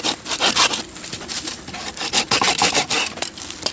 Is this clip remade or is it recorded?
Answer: recorded